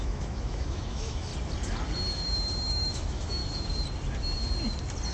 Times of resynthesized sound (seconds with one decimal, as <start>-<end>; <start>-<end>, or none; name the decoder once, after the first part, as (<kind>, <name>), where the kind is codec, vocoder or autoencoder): 0.0-1.3 (autoencoder, DAC-VAE); 2.7-3.4

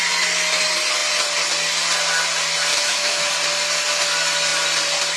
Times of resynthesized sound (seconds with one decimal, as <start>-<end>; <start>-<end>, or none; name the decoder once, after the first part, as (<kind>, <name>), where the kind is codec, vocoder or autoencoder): 2.7-3.3 (autoencoder, DAC-VAE)

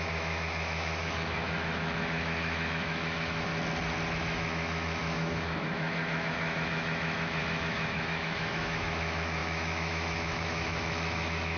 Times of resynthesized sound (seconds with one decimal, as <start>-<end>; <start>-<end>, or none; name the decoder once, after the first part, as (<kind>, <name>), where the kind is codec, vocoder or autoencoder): 0.0-3.5 (autoencoder, DAC-VAE); 4.2-11.6

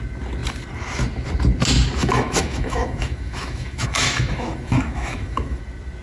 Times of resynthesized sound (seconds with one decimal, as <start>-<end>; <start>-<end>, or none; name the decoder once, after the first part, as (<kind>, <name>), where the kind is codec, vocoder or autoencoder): 2.0-5.6 (autoencoder, DAC-VAE)

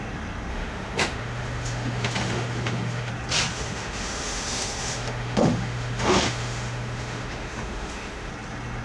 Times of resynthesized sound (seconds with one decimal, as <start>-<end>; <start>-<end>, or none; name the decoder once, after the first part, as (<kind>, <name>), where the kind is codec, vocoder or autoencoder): 0.5-3.1 (autoencoder, DAC-VAE); 3.5-8.3

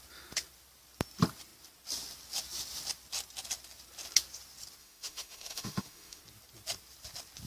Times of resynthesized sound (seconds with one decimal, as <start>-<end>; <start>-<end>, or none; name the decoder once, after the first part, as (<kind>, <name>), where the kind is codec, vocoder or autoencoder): 4.8-6.2 (autoencoder, DAC-VAE)

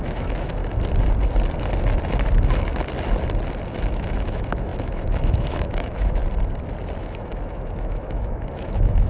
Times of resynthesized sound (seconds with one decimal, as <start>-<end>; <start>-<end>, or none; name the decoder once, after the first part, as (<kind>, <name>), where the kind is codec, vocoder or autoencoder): 0.0-0.6 (autoencoder, DAC-VAE); 3.7-6.2; 7.0-9.1